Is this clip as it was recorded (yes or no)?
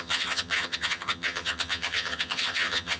no